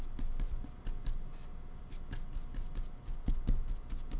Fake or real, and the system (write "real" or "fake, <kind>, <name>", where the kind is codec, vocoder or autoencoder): real